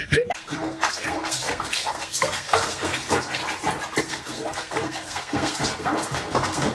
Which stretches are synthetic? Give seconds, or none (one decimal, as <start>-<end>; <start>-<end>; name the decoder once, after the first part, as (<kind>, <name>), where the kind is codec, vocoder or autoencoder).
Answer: 0.0-3.4 (codec, SNAC); 4.0-6.7